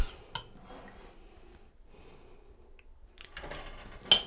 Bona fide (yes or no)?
yes